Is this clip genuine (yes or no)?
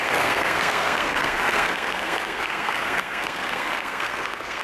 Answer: no